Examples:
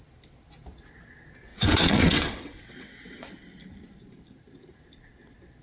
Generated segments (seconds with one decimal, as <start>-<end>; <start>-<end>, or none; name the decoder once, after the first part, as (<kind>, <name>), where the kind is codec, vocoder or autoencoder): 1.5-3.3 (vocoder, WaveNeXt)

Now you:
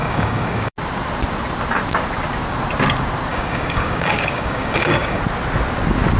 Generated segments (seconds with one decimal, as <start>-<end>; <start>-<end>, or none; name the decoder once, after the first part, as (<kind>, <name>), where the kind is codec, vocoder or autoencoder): 0.0-0.7 (codec, DAC); 3.3-5.2

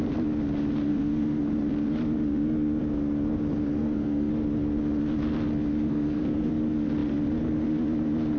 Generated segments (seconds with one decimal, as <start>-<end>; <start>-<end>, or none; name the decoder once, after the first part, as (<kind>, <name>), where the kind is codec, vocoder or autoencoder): 0.9-1.4 (codec, SNAC); 3.7-4.3; 5.9-6.5